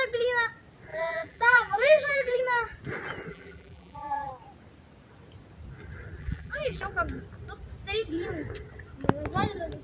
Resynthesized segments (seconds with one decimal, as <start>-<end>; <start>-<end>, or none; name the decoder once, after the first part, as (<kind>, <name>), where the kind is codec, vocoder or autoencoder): 0.9-2.4 (vocoder, BigVGAN v2); 3.3-4.3; 6.2-6.8